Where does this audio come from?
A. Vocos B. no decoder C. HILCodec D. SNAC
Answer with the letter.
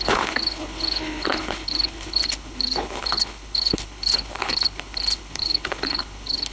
C